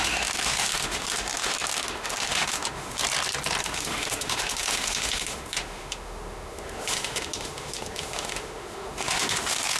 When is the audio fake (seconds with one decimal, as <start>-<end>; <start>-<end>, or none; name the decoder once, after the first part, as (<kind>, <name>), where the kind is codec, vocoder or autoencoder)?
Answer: 0.0-3.0 (autoencoder, DAC-VAE); 3.6-9.8